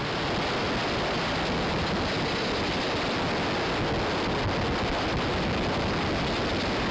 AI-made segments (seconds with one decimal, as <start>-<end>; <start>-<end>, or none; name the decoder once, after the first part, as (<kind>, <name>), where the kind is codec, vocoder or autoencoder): none